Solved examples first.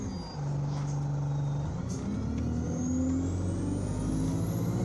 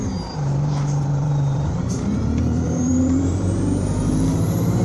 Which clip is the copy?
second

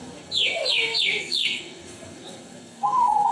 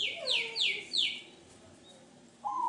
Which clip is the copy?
first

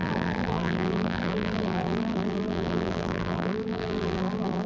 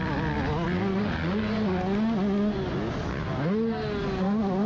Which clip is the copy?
first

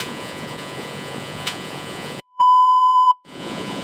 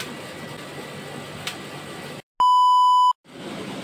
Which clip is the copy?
first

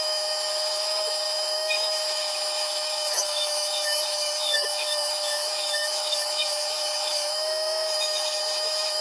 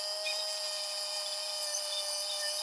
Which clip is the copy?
first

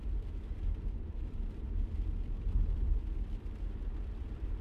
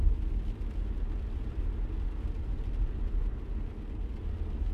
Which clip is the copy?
first